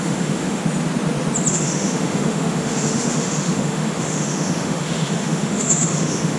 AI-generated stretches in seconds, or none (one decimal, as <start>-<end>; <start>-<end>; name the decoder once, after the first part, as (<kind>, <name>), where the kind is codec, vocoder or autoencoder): 0.0-0.6 (autoencoder, DAC-VAE); 1.5-6.4